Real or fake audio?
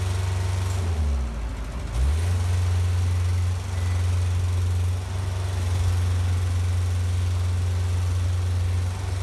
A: real